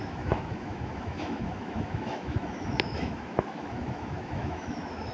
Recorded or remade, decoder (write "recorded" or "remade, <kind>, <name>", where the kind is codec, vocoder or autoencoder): remade, autoencoder, DAC-VAE